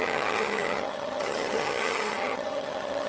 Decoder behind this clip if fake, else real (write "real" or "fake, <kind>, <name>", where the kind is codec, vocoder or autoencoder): fake, vocoder, HiFi-GAN